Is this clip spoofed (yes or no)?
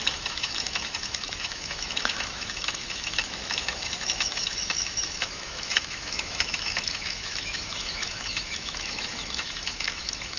yes